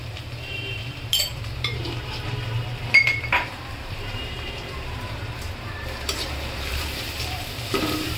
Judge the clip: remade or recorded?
remade